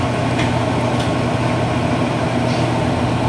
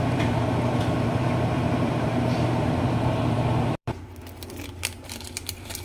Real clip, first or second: first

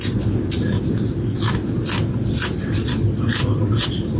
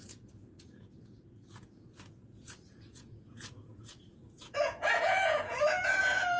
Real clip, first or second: first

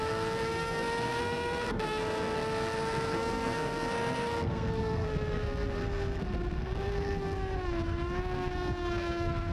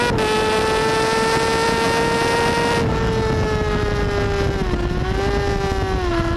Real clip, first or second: second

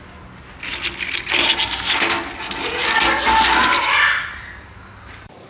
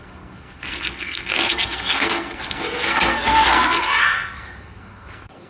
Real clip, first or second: first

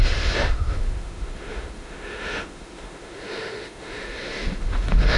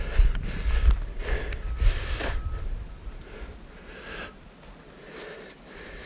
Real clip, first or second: second